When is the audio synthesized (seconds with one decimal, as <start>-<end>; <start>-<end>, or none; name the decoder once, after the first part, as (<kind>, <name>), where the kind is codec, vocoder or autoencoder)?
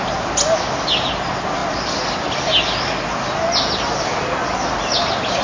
none